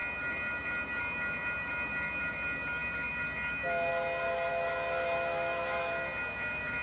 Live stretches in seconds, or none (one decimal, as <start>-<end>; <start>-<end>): 0.0-6.8